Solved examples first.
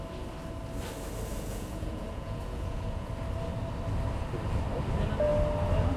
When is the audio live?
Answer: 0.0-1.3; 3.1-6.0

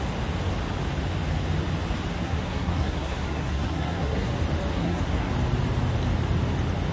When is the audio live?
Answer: 0.0-2.2; 4.3-4.7; 5.3-6.9